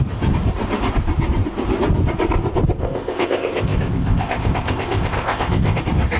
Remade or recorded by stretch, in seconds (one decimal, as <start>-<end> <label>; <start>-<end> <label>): 0.0-2.8 recorded; 2.8-5.8 remade; 5.8-6.2 recorded